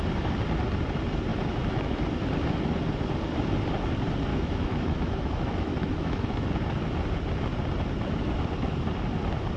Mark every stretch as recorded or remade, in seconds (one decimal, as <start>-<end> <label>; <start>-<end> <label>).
0.0-1.3 recorded; 1.3-1.9 remade; 1.9-4.3 recorded; 4.3-6.5 remade; 6.5-9.6 recorded